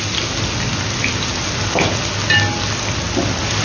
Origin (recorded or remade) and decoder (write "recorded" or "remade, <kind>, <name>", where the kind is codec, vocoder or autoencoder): recorded